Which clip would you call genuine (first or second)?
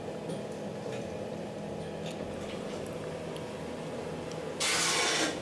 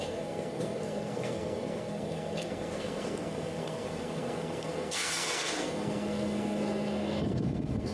first